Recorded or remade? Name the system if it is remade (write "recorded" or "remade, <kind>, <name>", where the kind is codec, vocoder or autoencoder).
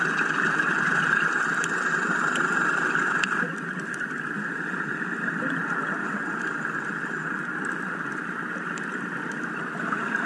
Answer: remade, vocoder, BigVGAN v2